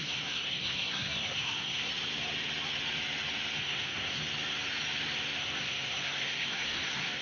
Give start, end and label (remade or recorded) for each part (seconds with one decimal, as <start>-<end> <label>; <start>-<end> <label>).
0.0-1.9 remade; 1.9-3.6 recorded; 3.6-4.2 remade; 4.2-5.4 recorded; 5.4-7.2 remade